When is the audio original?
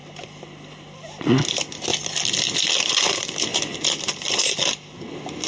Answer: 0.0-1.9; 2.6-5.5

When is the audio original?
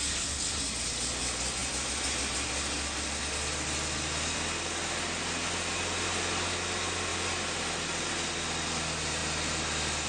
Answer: 0.0-7.1; 8.1-10.1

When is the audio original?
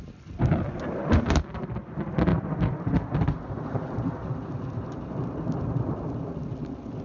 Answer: 0.0-2.3; 5.1-7.0